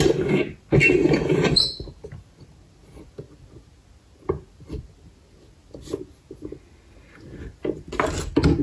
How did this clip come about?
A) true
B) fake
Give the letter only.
A